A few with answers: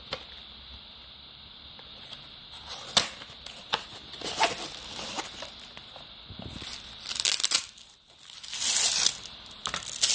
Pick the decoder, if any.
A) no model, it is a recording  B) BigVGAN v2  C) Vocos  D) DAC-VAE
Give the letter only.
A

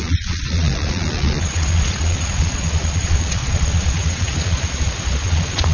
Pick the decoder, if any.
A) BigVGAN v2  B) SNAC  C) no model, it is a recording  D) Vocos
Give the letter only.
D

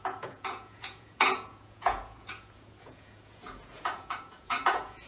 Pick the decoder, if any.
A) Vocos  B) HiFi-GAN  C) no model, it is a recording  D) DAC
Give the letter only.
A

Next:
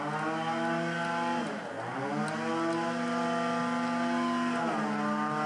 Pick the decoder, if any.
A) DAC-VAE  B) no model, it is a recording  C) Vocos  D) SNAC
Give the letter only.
B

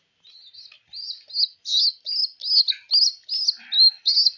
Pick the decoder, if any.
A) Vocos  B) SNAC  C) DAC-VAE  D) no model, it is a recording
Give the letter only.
D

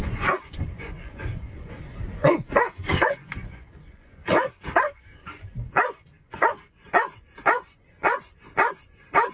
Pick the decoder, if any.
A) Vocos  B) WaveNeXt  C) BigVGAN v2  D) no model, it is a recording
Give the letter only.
A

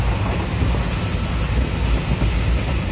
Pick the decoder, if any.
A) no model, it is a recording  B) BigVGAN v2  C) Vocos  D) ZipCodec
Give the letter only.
A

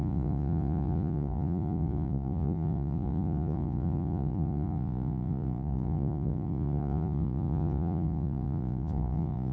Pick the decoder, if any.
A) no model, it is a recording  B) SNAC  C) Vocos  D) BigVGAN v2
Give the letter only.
C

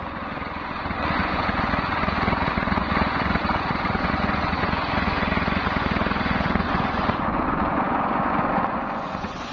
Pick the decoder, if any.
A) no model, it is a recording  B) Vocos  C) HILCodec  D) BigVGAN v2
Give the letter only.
B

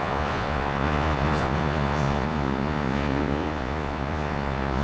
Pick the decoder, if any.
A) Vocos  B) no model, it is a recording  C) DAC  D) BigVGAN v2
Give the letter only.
A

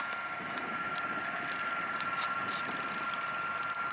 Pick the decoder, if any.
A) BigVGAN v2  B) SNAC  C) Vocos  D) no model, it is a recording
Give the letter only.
D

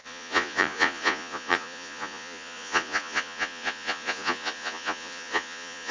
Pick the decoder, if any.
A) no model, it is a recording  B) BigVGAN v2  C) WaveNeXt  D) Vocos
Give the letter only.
D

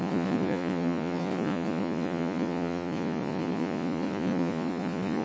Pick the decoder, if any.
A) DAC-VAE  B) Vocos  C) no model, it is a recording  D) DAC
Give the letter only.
B